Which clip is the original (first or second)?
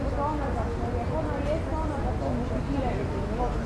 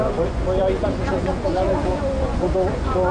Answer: first